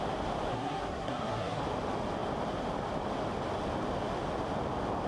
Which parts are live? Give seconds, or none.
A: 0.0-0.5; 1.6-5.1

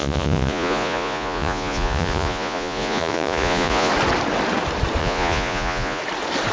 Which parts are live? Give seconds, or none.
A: 3.9-5.0; 6.0-6.5